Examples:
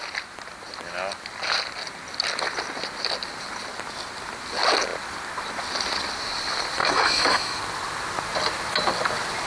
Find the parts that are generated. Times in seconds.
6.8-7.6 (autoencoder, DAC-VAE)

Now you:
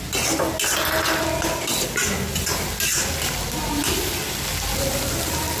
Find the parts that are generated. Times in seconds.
none

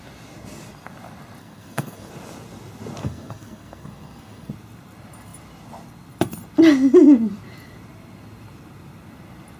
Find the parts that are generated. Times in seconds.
1.4-2.1 (codec, SNAC); 3.0-4.5